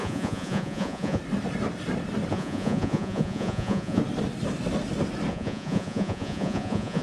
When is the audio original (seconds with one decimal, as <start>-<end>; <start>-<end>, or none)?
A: 1.2-2.3; 4.0-5.3